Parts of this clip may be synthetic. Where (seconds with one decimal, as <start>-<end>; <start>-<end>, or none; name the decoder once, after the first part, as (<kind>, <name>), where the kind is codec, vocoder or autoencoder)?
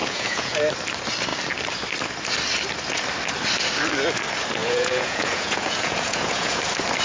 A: 0.0-0.6 (vocoder, Vocos); 4.6-6.6